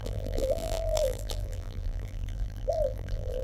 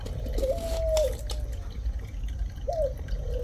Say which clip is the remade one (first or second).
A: first